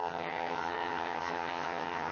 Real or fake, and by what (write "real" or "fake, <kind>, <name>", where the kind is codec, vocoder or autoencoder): fake, vocoder, HiFi-GAN